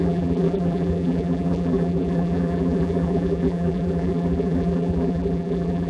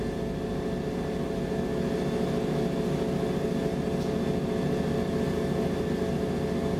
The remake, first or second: first